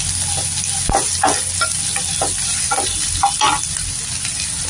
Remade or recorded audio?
recorded